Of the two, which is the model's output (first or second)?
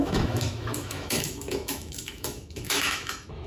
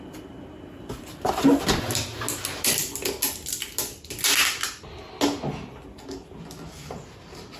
first